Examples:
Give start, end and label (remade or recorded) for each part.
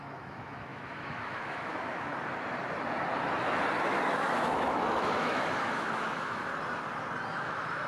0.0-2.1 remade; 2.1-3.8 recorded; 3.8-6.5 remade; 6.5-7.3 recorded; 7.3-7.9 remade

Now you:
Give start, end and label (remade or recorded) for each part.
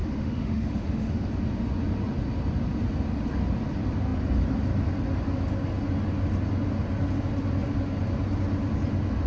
0.0-1.3 remade; 1.3-9.3 recorded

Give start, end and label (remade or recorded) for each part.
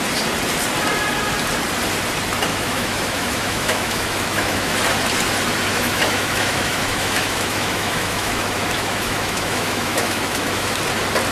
0.0-2.5 recorded; 2.5-4.7 remade; 4.7-5.7 recorded; 5.7-10.8 remade; 10.8-11.3 recorded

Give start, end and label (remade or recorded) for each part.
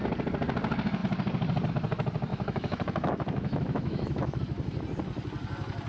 0.0-2.3 recorded; 2.3-4.4 remade; 4.4-5.9 recorded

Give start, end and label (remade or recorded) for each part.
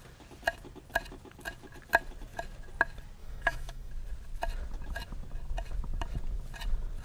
0.0-3.2 recorded; 3.2-3.9 remade; 3.9-7.0 recorded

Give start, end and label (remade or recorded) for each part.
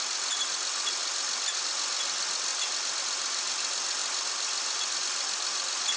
0.0-6.0 recorded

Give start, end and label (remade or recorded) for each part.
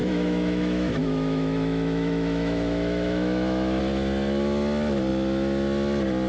0.0-3.8 remade; 3.8-6.3 recorded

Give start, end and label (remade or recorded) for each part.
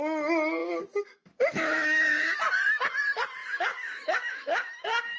0.0-0.6 recorded; 0.6-2.4 remade; 2.4-3.4 recorded; 3.4-4.7 remade; 4.7-5.2 recorded